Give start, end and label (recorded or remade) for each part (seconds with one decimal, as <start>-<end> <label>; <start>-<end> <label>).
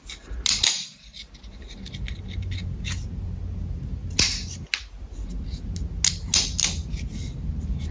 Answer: 0.0-7.9 recorded